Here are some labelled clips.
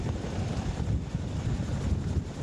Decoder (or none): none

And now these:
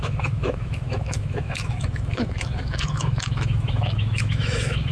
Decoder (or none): autoencoder, DAC-VAE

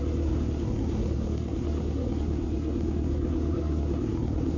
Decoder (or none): codec, SNAC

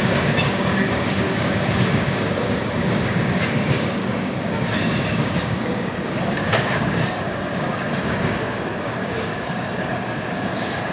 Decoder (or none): codec, DAC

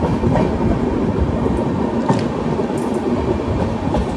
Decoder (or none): none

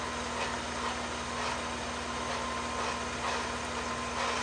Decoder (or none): none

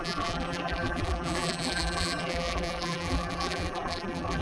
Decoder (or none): vocoder, BigVGAN v2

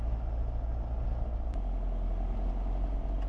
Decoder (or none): none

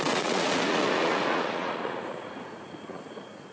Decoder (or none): vocoder, Vocos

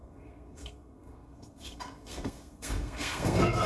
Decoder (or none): codec, SNAC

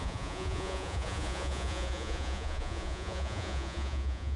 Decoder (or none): vocoder, Vocos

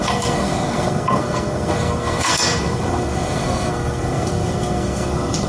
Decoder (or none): codec, SNAC